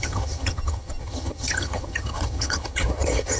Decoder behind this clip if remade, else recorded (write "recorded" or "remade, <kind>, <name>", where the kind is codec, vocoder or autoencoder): remade, vocoder, HiFi-GAN